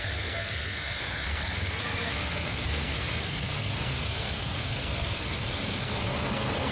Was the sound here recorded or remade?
remade